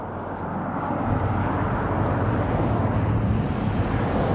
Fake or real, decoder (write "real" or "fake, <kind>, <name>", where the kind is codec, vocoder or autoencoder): real